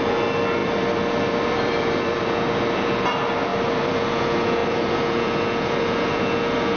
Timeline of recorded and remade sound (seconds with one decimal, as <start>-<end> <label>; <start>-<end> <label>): 0.0-0.6 recorded; 0.6-2.3 remade; 2.3-3.5 recorded; 3.5-4.1 remade; 4.1-6.8 recorded